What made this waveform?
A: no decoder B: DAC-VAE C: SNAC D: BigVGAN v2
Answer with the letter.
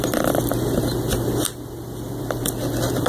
D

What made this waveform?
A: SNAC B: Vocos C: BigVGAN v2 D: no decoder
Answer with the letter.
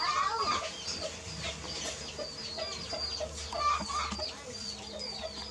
D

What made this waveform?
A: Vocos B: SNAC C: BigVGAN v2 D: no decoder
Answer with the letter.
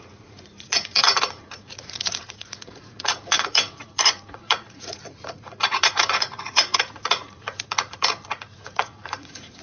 A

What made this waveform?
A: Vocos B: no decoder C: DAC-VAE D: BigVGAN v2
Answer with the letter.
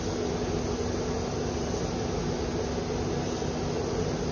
B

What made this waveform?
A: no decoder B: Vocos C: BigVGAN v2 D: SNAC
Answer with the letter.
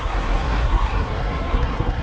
D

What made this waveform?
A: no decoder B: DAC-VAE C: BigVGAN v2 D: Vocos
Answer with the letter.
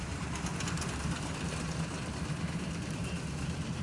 C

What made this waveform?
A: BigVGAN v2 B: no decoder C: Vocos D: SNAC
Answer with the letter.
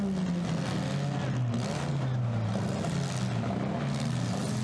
B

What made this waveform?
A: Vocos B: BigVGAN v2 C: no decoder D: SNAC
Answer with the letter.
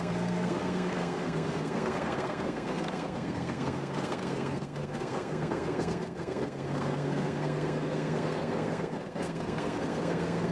D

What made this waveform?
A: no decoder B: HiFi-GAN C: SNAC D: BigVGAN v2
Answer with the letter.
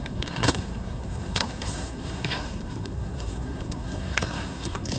C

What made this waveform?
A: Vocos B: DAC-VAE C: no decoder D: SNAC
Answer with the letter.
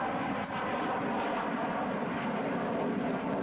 C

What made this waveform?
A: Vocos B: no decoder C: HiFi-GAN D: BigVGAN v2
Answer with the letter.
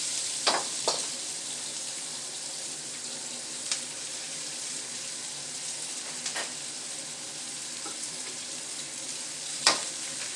D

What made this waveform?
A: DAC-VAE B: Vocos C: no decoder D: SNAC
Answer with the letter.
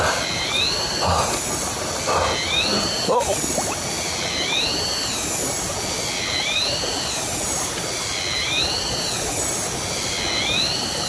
C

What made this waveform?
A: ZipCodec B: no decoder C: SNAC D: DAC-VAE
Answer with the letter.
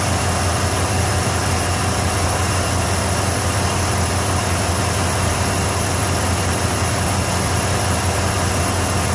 B